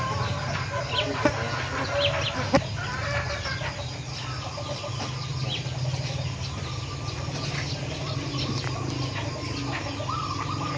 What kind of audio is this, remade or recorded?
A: recorded